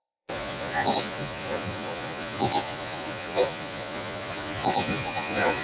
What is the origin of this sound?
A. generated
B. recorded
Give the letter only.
A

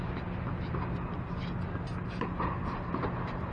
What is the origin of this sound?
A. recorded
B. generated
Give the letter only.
A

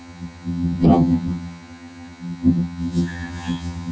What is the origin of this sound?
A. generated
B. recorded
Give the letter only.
A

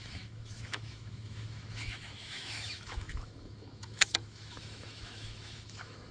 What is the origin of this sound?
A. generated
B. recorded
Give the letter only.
A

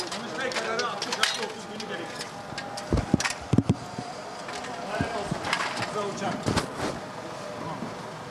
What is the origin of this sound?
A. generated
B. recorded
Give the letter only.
B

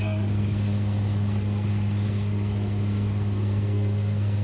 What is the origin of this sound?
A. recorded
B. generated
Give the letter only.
B